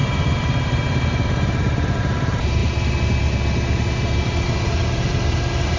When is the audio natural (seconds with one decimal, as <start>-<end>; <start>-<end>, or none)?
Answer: 2.6-4.8